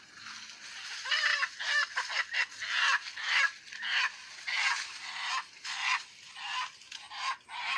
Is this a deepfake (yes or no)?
no